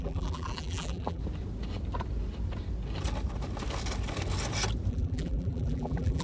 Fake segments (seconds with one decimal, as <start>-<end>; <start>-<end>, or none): 0.0-1.2; 4.9-6.2